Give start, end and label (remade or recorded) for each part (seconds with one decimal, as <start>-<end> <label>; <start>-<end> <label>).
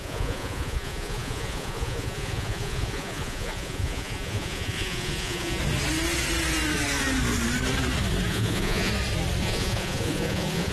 0.0-5.6 remade; 5.6-8.3 recorded; 8.3-8.9 remade; 8.9-9.4 recorded; 9.4-10.7 remade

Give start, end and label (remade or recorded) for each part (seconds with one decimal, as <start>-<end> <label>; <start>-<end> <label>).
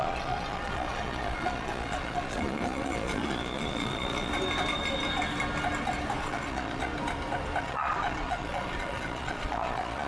0.0-4.3 remade; 4.3-6.2 recorded; 6.2-6.9 remade; 6.9-7.6 recorded; 7.6-10.1 remade